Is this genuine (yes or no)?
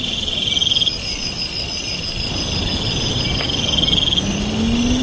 yes